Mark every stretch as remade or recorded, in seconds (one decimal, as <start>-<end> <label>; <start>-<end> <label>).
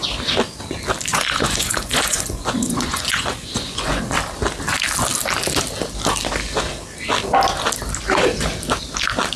0.0-1.1 recorded; 1.1-4.0 remade; 4.0-9.4 recorded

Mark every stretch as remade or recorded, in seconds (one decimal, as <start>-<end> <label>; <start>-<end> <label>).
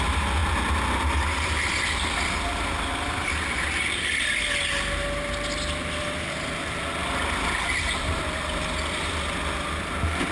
0.0-10.3 recorded